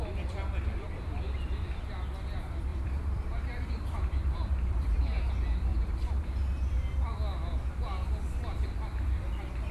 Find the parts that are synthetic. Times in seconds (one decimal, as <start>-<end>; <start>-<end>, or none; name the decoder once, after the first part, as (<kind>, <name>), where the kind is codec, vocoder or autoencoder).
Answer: 2.7-5.3 (vocoder, BigVGAN v2); 5.7-6.3